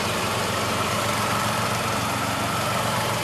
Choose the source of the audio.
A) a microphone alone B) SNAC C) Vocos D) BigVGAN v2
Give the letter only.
D